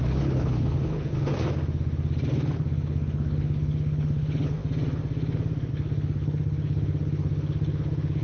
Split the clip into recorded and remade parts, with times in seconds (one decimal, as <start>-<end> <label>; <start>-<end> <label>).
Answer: 0.0-1.3 remade; 1.3-2.3 recorded; 2.3-4.6 remade; 4.6-5.7 recorded; 5.7-8.2 remade